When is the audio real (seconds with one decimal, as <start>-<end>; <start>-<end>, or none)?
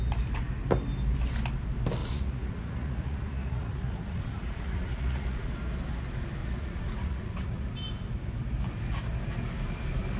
0.0-2.0; 5.5-6.4; 7.7-10.2